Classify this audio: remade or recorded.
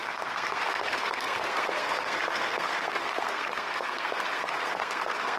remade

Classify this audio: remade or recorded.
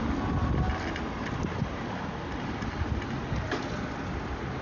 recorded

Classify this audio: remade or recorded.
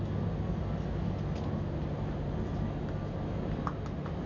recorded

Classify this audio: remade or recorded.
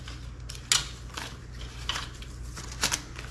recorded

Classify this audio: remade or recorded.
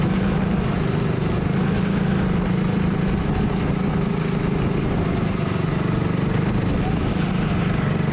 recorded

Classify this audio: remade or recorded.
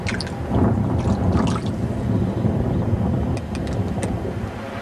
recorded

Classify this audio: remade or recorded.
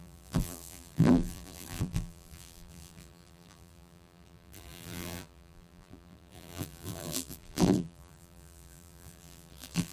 remade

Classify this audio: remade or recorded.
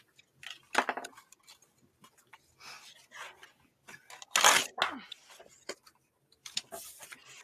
recorded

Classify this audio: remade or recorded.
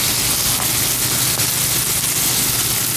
recorded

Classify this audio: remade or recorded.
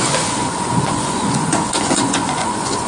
remade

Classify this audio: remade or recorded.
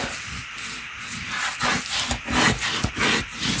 recorded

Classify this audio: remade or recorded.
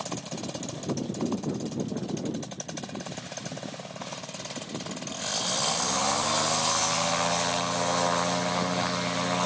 recorded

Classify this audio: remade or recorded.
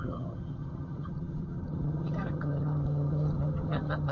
remade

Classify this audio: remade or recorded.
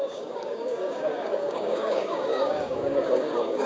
remade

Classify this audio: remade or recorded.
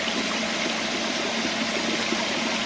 recorded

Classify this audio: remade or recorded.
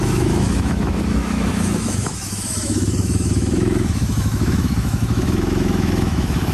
remade